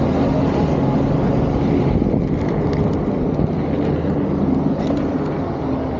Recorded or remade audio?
recorded